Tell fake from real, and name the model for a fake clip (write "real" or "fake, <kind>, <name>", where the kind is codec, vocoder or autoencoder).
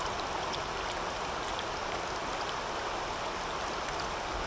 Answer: real